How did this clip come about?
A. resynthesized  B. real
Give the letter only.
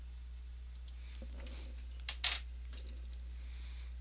B